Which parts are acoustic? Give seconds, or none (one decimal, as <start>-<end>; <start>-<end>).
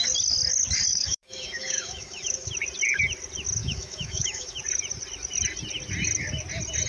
0.0-0.9; 2.5-3.6; 4.6-6.9